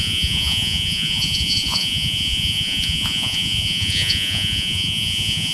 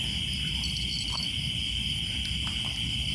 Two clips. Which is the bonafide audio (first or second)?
second